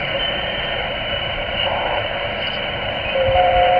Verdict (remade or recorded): remade